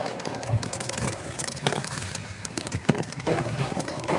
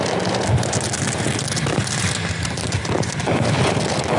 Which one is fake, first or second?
first